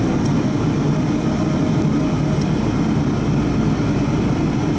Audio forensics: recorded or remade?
recorded